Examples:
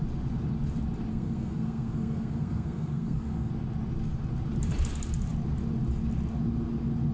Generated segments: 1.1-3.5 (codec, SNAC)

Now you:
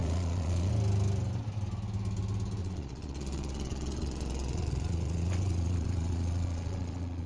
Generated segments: 0.0-0.7 (vocoder, Vocos); 2.6-7.3

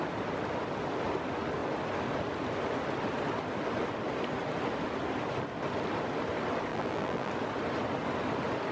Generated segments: 6.7-7.3 (vocoder, BigVGAN v2)

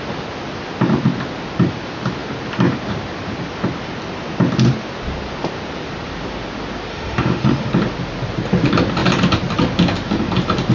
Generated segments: 6.9-7.7 (autoencoder, DAC-VAE)